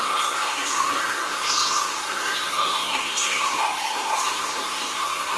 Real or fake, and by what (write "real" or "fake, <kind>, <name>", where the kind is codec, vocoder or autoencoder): fake, codec, SNAC